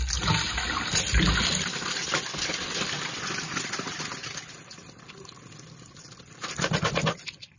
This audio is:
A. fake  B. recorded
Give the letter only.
B